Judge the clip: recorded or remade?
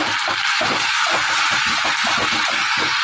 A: recorded